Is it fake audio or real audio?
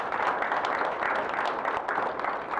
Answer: real